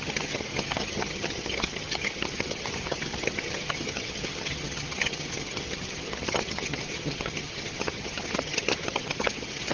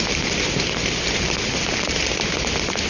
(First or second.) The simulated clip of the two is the first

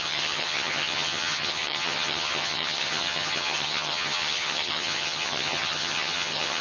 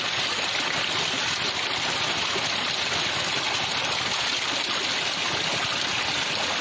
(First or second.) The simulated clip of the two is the first